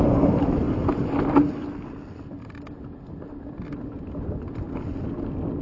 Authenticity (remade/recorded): recorded